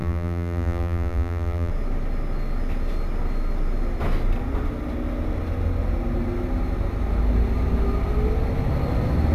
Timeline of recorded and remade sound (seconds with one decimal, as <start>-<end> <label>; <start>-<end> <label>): 0.0-1.7 remade; 1.7-9.3 recorded